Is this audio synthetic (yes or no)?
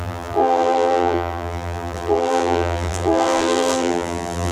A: yes